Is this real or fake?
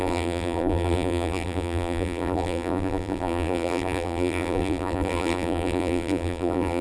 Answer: fake